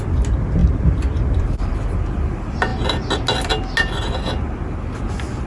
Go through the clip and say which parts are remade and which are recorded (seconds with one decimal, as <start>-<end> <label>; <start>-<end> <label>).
0.0-0.6 recorded; 0.6-2.0 remade; 2.0-5.5 recorded